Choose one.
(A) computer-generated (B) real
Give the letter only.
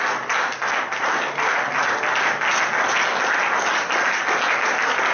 B